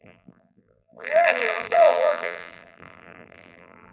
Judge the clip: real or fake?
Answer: fake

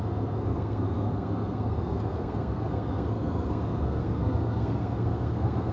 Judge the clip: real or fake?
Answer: fake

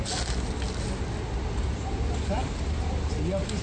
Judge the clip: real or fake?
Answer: real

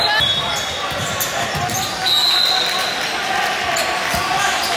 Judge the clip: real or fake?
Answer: real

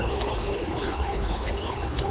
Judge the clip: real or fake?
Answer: fake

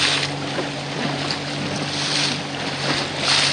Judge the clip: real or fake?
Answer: real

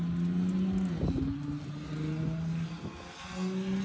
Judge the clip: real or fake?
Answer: real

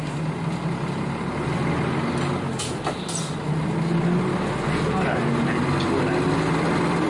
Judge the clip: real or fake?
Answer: real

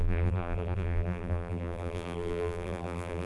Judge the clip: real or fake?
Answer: fake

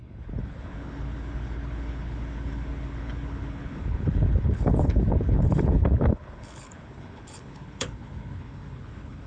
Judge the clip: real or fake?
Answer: fake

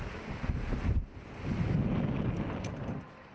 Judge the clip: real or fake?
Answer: real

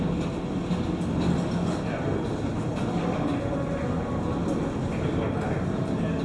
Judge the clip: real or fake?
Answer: real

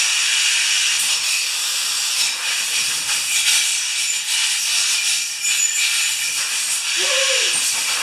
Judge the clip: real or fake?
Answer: real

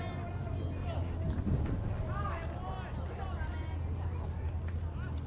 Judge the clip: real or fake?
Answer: real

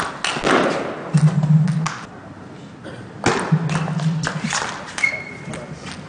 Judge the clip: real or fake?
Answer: real